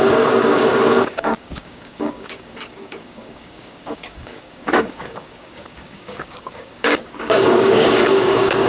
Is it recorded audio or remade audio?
remade